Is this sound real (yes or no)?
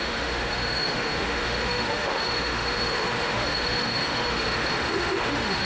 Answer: no